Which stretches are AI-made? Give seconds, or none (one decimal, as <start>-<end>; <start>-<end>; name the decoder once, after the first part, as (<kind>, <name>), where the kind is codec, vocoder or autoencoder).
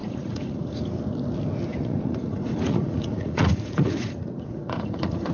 0.0-0.8 (vocoder, Vocos); 1.7-5.3